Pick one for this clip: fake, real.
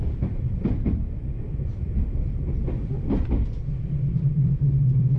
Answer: fake